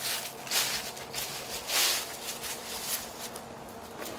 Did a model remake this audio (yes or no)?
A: no